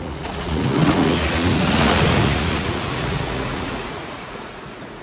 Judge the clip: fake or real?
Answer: fake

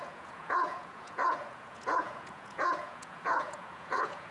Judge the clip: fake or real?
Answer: fake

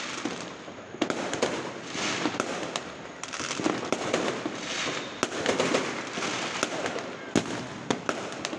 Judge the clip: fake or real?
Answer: real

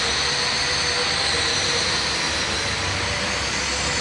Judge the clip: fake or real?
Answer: real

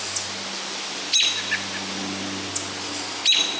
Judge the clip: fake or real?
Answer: real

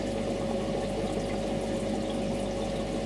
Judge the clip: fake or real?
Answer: real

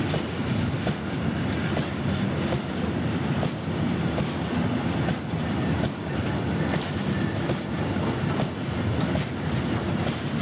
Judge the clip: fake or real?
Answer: real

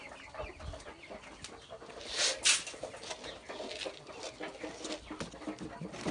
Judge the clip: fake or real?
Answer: real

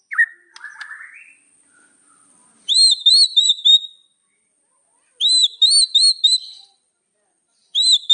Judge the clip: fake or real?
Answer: real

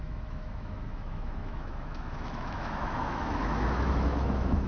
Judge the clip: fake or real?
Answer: fake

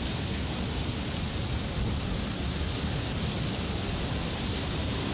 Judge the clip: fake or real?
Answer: real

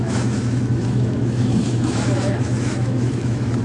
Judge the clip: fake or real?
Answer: fake